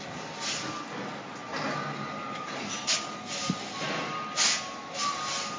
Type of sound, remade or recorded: recorded